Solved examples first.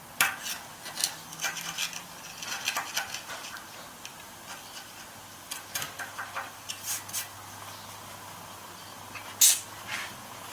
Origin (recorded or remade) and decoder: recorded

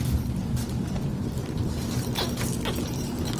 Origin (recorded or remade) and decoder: remade, vocoder, BigVGAN v2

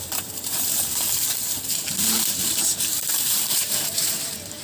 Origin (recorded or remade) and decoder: remade, vocoder, BigVGAN v2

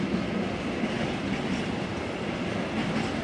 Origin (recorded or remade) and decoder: recorded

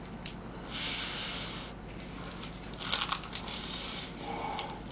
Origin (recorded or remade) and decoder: recorded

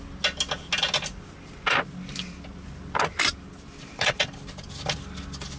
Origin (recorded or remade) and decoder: recorded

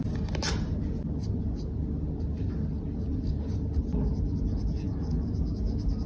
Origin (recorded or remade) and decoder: recorded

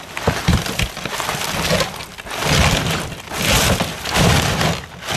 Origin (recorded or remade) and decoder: recorded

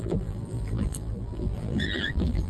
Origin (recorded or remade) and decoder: remade, vocoder, BigVGAN v2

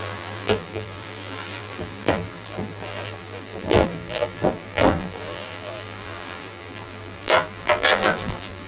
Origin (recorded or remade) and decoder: remade, vocoder, BigVGAN v2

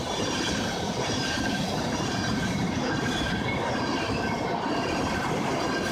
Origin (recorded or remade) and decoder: remade, vocoder, BigVGAN v2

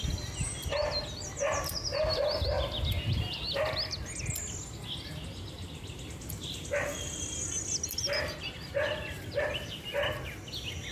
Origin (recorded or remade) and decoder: recorded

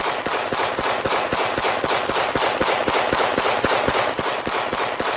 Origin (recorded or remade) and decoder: recorded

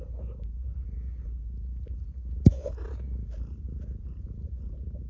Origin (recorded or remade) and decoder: remade, vocoder, BigVGAN v2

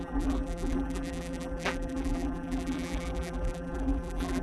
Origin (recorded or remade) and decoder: remade, vocoder, BigVGAN v2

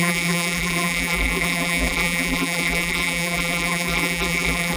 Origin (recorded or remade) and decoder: remade, vocoder, BigVGAN v2